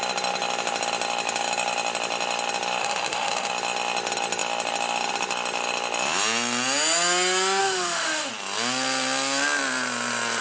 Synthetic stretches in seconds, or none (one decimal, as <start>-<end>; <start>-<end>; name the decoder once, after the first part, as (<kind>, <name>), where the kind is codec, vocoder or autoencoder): 2.8-3.5 (autoencoder, DAC-VAE); 7.6-8.3